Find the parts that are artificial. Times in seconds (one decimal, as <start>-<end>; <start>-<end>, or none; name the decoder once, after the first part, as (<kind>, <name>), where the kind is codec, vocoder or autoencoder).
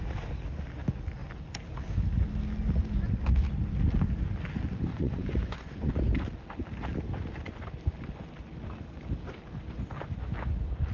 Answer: 4.9-5.9 (vocoder, Vocos)